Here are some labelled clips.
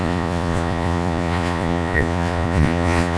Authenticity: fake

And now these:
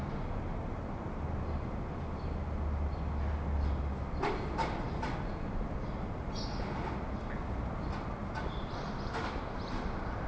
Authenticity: real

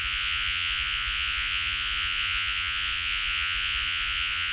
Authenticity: fake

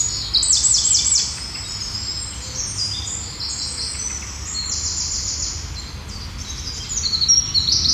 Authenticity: real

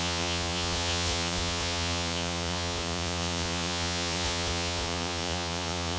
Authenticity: fake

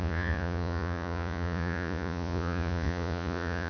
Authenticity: fake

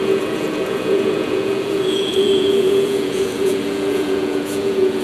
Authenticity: fake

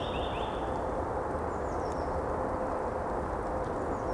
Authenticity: real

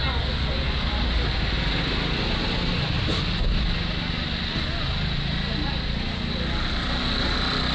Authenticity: real